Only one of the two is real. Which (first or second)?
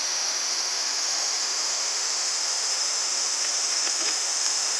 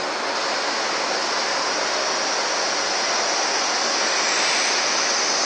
second